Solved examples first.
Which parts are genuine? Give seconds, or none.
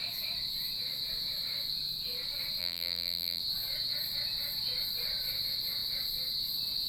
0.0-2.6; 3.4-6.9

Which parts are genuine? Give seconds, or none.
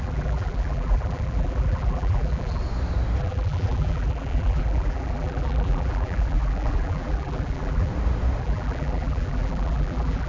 2.6-3.2; 7.9-8.4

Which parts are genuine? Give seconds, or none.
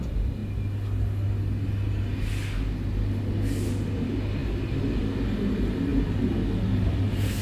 0.0-7.4